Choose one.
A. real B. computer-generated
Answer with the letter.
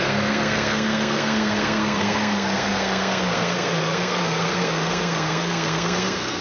B